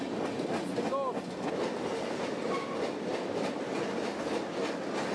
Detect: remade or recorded recorded